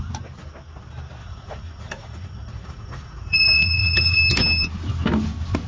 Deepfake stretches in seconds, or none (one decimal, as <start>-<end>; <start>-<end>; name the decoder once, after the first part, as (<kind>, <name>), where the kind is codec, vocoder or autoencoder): 1.2-4.2 (vocoder, Vocos)